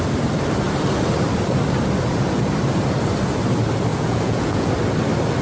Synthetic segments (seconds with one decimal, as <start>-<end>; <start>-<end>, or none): 3.9-4.7